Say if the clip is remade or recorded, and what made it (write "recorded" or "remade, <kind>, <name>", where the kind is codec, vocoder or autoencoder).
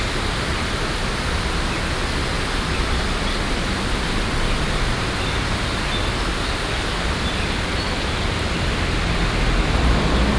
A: recorded